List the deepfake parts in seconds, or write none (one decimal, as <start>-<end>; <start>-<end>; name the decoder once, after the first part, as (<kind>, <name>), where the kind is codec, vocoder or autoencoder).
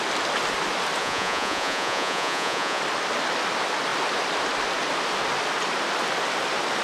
1.0-2.8 (vocoder, Vocos)